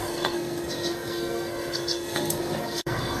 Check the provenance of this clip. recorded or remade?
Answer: remade